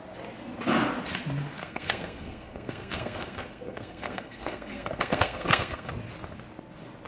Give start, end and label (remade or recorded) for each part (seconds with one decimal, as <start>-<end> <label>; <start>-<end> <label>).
0.0-1.6 recorded; 1.6-5.9 remade; 5.9-7.1 recorded